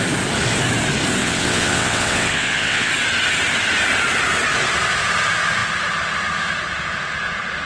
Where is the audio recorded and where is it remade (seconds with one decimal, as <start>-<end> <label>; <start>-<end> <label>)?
0.0-1.2 recorded; 1.2-2.9 remade; 2.9-7.7 recorded